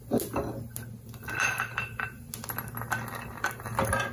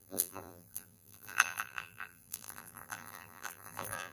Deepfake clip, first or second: second